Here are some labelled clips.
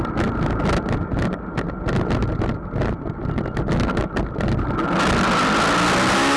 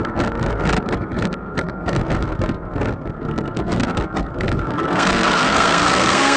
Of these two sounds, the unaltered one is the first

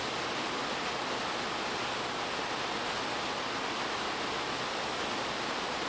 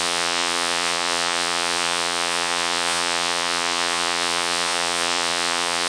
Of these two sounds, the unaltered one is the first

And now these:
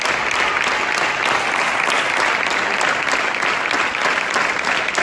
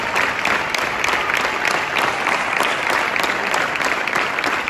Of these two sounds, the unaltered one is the first